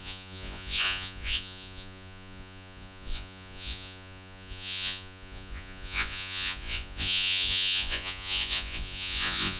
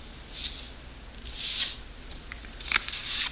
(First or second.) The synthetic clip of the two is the first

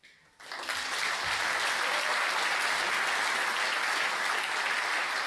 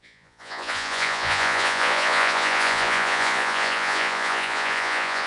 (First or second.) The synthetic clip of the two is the second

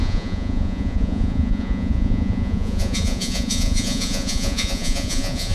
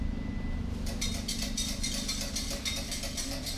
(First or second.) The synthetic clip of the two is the first